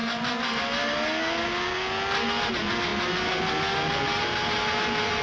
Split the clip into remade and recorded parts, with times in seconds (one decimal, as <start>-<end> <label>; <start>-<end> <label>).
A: 0.0-5.2 recorded